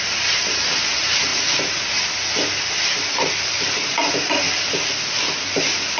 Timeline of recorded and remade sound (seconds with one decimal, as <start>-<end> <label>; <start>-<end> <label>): 0.0-6.0 recorded